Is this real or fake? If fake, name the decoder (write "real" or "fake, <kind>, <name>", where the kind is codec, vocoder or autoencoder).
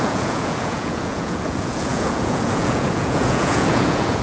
fake, vocoder, Vocos